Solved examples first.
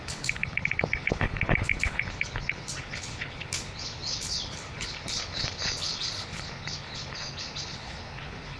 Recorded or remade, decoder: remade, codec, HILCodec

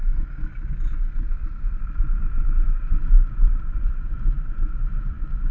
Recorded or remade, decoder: remade, vocoder, BigVGAN v2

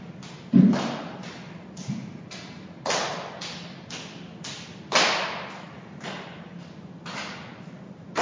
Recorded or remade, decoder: recorded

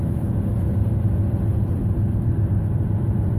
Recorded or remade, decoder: remade, vocoder, BigVGAN v2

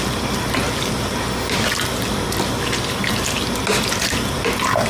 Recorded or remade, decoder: recorded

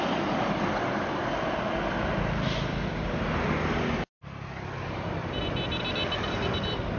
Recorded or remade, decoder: recorded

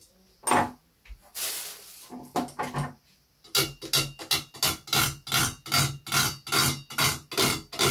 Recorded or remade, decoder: recorded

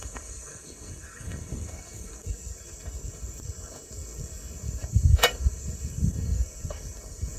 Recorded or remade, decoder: remade, codec, SNAC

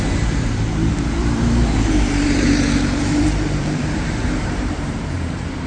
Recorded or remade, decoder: remade, vocoder, BigVGAN v2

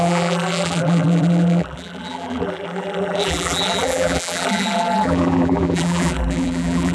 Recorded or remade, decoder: remade, vocoder, BigVGAN v2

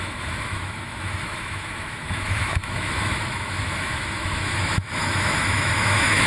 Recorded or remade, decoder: remade, autoencoder, DAC-VAE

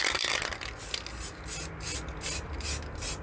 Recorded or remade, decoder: recorded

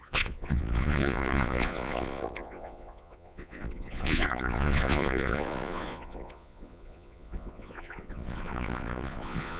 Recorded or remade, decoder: remade, vocoder, Vocos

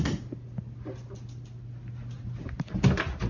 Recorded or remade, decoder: recorded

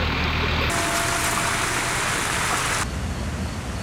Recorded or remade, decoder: recorded